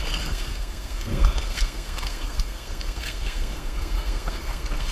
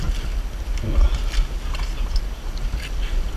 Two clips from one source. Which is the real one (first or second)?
second